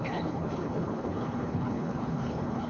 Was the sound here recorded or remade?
remade